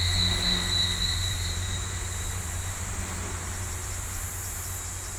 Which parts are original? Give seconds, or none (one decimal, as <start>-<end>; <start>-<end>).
0.0-1.2; 4.3-5.2